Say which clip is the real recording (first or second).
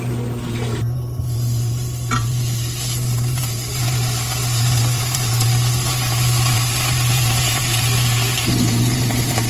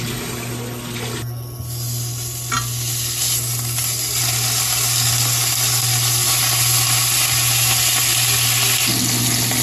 second